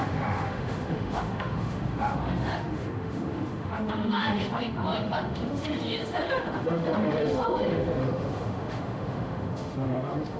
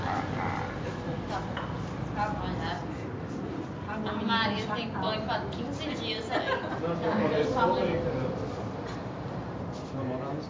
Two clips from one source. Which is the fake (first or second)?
first